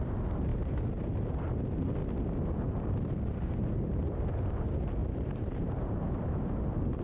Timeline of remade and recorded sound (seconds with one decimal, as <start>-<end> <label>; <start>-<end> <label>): 0.0-2.0 remade; 2.0-2.8 recorded; 2.8-7.0 remade